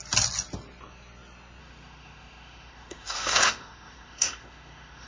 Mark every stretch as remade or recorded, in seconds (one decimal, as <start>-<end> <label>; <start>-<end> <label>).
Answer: 0.0-1.6 recorded; 1.6-5.1 remade